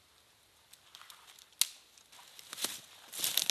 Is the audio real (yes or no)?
yes